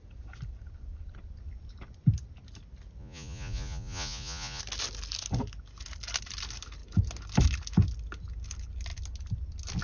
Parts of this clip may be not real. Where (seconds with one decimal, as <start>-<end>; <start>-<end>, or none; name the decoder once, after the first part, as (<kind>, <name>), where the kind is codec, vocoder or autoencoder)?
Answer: 3.0-4.6 (vocoder, Vocos)